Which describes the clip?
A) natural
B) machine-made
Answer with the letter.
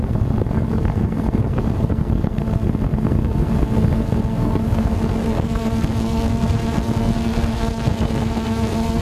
B